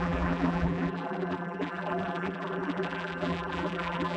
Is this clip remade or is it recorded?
remade